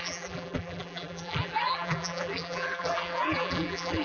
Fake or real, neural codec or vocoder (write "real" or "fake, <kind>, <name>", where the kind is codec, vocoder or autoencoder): fake, vocoder, BigVGAN v2